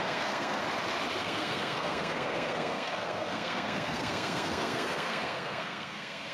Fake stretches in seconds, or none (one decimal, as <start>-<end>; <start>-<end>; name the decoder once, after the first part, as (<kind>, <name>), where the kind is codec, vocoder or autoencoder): 0.0-0.6 (codec, SNAC); 1.2-6.3